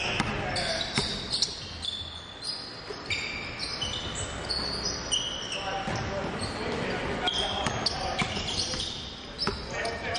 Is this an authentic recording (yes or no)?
yes